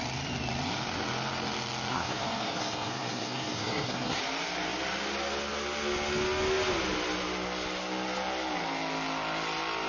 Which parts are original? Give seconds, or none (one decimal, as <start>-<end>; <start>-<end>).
0.0-1.9; 4.2-9.9

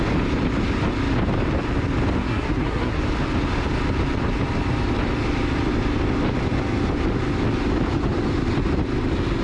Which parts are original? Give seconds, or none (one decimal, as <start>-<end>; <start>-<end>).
0.0-2.2; 3.0-9.4

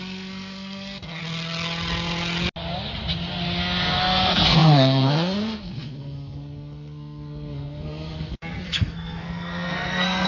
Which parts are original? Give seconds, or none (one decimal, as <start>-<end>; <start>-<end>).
1.2-4.0

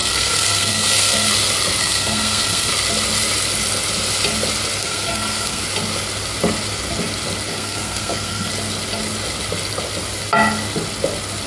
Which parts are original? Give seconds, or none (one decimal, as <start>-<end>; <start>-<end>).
1.3-1.8; 2.7-4.8; 5.6-7.5; 8.5-11.5

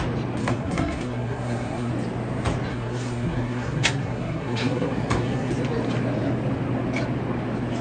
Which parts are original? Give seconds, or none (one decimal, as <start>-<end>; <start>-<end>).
0.0-0.4; 1.9-2.7; 5.5-7.8

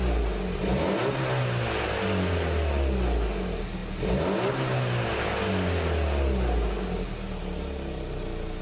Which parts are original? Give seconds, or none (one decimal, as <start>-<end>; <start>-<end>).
0.0-8.6